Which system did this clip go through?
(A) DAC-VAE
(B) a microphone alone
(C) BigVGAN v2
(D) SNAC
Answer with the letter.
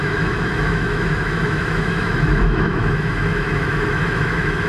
A